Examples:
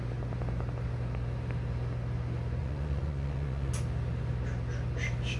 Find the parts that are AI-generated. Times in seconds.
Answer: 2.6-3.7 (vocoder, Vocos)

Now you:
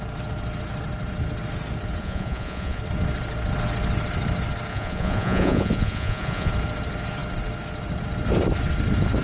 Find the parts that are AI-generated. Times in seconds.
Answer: 2.0-2.8 (vocoder, Vocos); 4.7-6.5

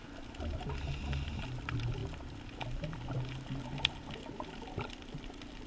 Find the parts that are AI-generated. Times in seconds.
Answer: none

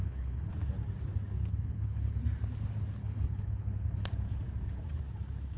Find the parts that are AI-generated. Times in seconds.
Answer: 0.0-0.5 (codec, HILCodec); 1.5-2.2; 3.0-4.1

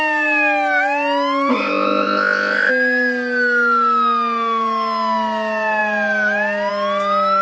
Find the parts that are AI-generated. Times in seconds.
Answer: 1.5-2.7 (codec, ZipCodec)

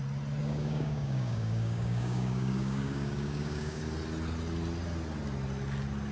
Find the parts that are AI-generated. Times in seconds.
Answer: 0.4-3.8 (codec, DAC)

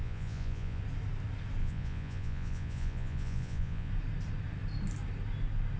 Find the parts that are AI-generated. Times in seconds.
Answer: 0.0-0.8 (vocoder, Vocos); 1.6-3.9

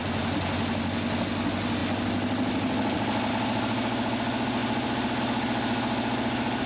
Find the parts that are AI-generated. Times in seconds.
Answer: none